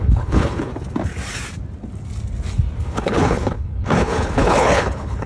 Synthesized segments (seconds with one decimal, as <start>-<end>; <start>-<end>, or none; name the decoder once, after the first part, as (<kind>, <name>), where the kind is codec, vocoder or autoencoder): 0.0-0.7 (codec, HILCodec); 2.8-5.3